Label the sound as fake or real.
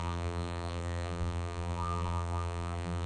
fake